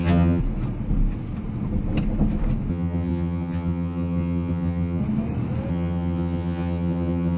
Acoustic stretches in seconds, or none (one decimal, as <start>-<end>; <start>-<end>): 0.4-2.7; 5.0-5.7